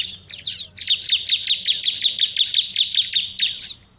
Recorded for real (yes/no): yes